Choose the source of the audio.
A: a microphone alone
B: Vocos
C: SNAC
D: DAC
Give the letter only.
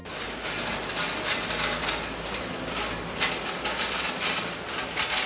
A